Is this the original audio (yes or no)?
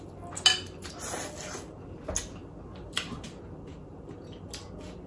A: yes